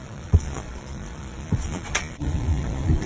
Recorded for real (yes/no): no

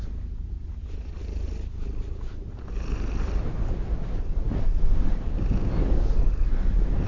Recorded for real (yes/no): yes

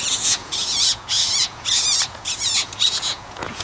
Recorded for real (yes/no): no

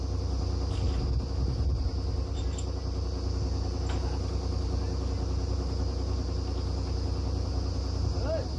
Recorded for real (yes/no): yes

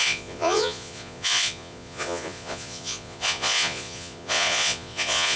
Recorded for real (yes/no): no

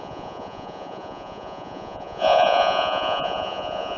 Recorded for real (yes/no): no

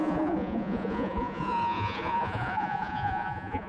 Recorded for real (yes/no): no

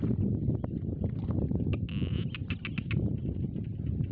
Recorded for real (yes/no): yes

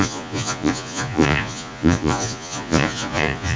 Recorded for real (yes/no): no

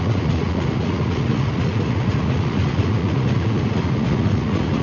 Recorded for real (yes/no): no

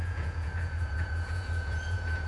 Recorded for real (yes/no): no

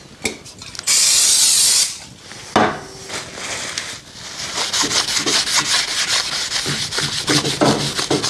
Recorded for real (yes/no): yes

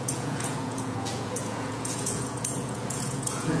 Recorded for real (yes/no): no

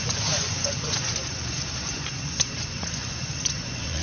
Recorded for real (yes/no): no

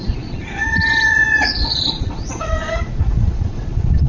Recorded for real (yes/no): no